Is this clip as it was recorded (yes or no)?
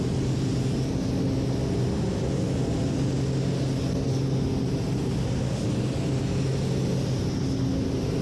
yes